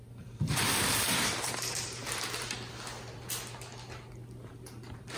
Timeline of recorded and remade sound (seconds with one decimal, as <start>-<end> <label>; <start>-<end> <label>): 0.0-2.0 remade; 2.0-4.4 recorded; 4.4-5.2 remade